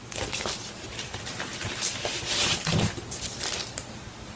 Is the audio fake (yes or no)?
no